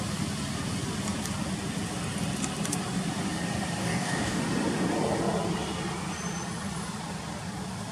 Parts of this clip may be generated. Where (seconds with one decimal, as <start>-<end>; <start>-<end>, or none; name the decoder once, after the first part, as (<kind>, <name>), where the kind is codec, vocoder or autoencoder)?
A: 3.8-4.4 (codec, DAC)